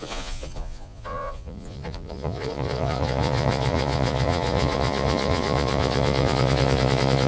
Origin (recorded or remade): remade